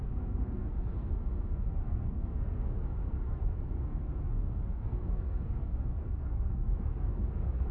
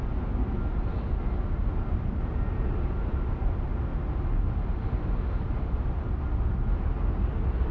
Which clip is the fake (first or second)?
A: first